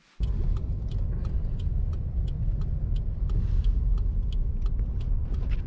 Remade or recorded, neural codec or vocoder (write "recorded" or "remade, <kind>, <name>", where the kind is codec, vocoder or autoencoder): recorded